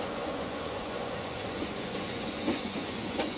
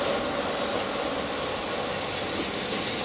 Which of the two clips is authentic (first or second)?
second